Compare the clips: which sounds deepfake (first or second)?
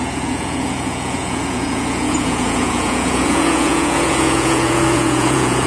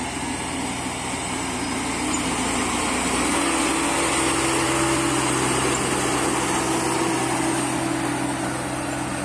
first